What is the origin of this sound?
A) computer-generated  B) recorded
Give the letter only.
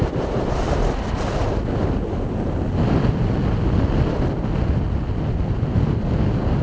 B